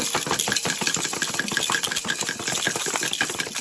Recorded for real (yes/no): yes